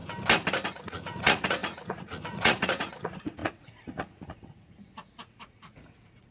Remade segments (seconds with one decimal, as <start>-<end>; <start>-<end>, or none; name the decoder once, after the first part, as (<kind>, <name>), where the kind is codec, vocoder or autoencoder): 0.7-6.3 (vocoder, Vocos)